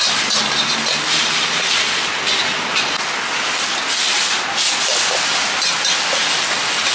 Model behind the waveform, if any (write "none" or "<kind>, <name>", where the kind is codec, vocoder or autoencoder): none